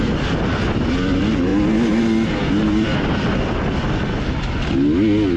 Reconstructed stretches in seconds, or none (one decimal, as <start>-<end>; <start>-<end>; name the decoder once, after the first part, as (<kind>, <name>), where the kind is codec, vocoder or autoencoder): none